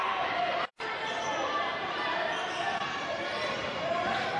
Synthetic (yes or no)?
yes